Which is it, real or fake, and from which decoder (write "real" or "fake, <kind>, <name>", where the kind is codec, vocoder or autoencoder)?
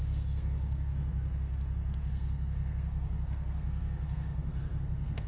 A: fake, codec, SNAC